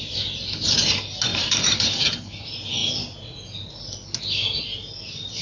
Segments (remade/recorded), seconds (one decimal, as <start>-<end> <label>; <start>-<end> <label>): 0.0-1.3 recorded; 1.3-2.4 remade; 2.4-5.4 recorded

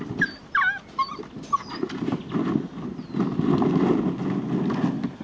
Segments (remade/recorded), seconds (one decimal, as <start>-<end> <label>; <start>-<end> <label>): 0.0-5.2 recorded

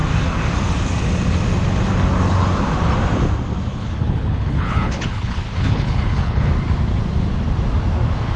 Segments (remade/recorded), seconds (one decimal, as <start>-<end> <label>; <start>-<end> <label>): 0.0-3.7 recorded; 3.7-6.5 remade; 6.5-8.4 recorded